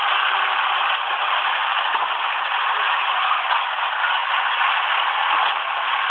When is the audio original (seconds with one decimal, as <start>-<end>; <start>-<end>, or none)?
0.0-1.6; 3.2-6.1